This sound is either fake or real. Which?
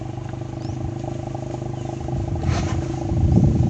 real